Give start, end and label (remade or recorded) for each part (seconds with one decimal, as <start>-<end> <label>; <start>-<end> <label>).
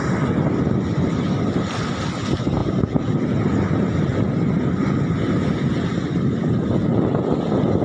0.0-7.8 recorded